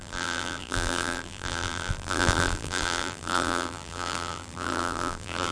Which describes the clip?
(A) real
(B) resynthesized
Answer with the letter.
B